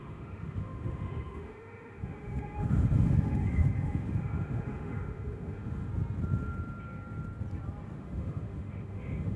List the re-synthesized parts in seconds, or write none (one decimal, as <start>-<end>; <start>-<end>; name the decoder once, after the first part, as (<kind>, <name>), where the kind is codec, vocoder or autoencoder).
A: 0.0-5.9 (autoencoder, DAC-VAE); 8.0-9.4